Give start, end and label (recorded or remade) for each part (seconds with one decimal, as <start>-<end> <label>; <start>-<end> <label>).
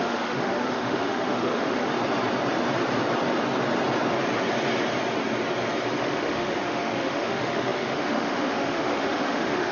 0.0-1.9 remade; 1.9-6.0 recorded; 6.0-9.7 remade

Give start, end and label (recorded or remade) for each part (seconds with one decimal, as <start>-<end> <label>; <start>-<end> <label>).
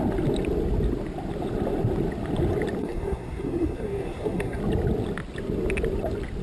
0.0-2.8 recorded; 2.8-4.6 remade; 4.6-6.4 recorded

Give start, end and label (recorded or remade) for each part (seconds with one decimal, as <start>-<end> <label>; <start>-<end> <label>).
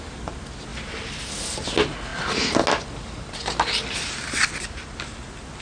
0.0-5.6 recorded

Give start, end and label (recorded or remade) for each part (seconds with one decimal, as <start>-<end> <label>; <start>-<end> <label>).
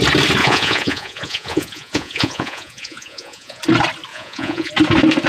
0.0-0.4 recorded; 0.4-3.6 remade; 3.6-4.1 recorded; 4.1-4.7 remade; 4.7-5.3 recorded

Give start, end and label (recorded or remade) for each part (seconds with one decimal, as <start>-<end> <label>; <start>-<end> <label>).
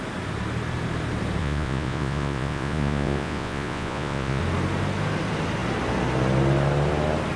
0.0-1.4 recorded; 1.4-4.4 remade; 4.4-7.4 recorded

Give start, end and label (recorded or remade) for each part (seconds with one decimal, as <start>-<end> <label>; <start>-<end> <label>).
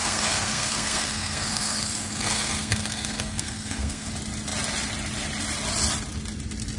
0.0-4.1 remade; 4.1-6.8 recorded